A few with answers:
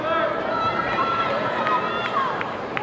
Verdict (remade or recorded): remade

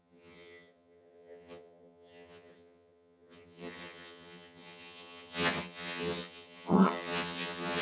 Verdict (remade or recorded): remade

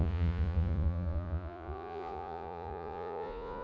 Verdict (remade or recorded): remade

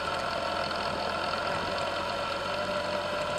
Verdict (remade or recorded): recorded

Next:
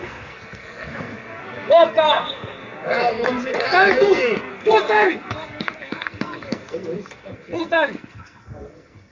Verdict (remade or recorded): remade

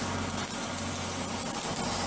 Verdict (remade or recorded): recorded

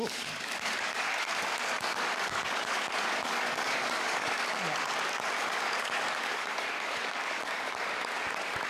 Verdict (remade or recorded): remade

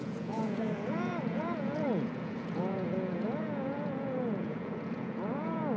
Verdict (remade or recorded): remade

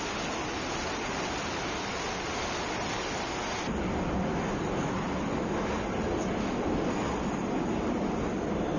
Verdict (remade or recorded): recorded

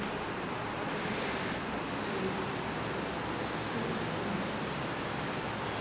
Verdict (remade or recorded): recorded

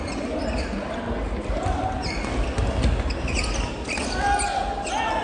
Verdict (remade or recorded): recorded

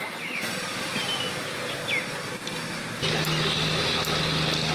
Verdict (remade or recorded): recorded